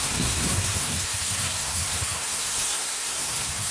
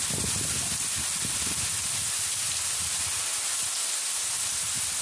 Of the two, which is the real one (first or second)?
second